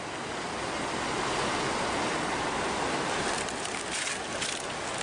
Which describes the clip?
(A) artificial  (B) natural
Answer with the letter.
B